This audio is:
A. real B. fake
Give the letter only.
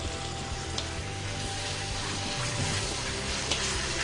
A